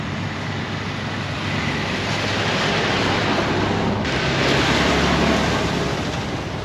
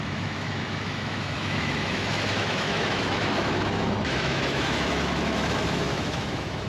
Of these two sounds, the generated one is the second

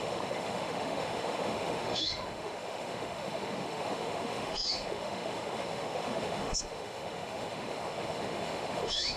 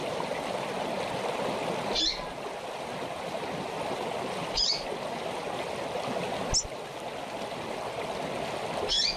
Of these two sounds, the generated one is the first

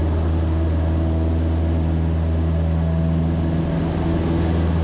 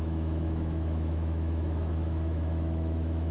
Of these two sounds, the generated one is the second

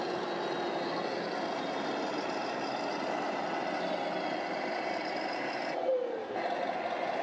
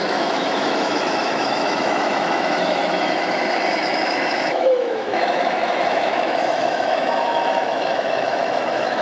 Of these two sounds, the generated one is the second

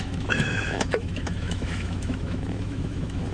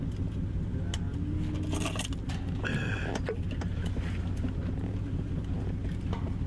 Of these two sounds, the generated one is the first